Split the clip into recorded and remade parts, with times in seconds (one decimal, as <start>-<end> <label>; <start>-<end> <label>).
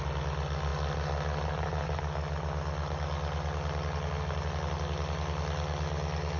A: 0.0-6.4 recorded